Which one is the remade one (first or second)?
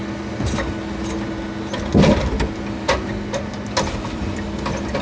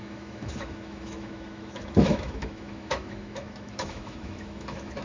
second